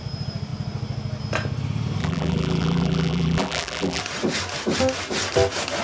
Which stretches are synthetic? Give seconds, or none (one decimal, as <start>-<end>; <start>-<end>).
2.0-4.0